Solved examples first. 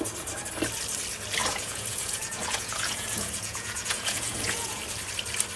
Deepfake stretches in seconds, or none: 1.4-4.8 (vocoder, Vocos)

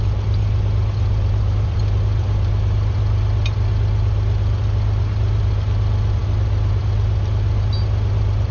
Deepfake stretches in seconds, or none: none

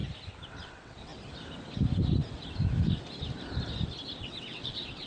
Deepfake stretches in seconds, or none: 0.5-1.1 (vocoder, WaveNeXt); 4.2-5.1

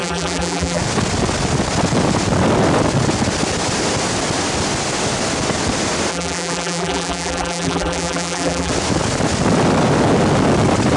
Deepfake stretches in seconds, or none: 0.0-0.8 (vocoder, BigVGAN v2); 6.1-8.7